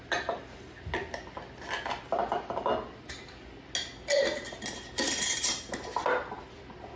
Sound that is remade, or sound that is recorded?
recorded